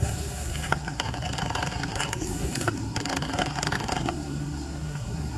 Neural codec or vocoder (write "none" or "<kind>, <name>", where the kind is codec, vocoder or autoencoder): codec, SNAC